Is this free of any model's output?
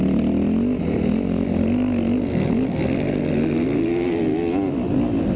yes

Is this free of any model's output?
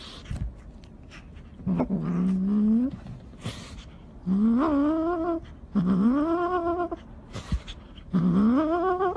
yes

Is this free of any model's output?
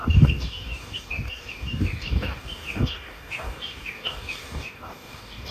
no